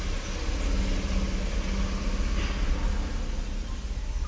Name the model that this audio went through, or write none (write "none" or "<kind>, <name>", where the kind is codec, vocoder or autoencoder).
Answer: none